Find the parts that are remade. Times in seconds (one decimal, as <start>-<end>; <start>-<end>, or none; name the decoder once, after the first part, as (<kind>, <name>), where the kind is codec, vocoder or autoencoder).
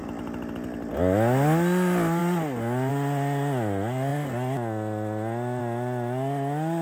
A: none